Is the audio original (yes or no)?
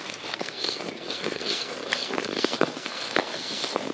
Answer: no